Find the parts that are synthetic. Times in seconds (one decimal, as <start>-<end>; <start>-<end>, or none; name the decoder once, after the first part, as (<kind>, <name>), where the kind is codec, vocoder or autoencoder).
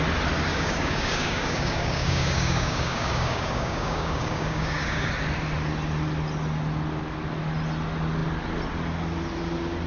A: 0.5-5.1 (codec, DAC)